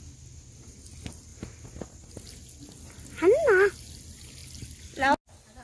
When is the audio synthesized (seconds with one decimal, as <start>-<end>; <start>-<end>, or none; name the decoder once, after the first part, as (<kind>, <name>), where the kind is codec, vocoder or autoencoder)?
none

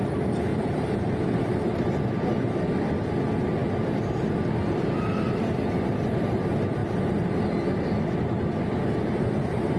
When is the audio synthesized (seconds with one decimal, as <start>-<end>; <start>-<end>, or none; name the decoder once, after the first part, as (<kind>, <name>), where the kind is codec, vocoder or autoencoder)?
0.5-1.9 (vocoder, BigVGAN v2); 6.8-7.4

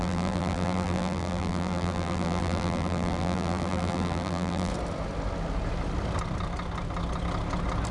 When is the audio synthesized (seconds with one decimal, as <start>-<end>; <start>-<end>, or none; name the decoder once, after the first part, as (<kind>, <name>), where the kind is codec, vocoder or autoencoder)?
0.0-4.7 (vocoder, BigVGAN v2)

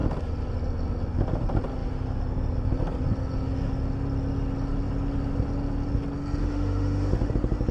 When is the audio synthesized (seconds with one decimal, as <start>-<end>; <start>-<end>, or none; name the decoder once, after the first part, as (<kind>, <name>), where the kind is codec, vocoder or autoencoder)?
6.4-7.3 (autoencoder, DAC-VAE)

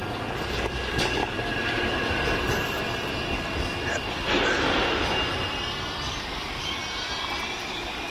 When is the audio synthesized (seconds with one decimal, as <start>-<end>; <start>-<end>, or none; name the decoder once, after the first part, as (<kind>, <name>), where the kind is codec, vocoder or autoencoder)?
0.5-1.2 (codec, DAC); 6.1-6.8; 7.6-8.1

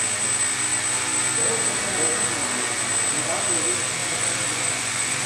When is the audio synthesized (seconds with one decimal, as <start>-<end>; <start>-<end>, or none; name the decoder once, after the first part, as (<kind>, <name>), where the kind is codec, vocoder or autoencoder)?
4.0-5.3 (vocoder, Vocos)

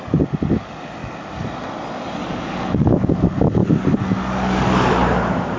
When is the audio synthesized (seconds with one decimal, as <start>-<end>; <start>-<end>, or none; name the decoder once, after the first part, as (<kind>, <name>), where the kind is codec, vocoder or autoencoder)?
2.2-3.1 (codec, DAC); 3.6-4.9

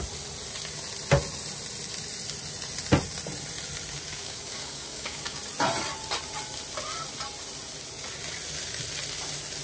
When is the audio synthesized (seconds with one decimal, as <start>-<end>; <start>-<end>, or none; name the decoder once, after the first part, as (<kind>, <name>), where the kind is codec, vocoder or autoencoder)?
4.1-5.4 (codec, DAC)